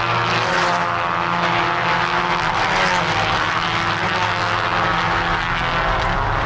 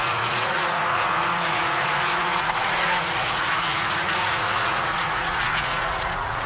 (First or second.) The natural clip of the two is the first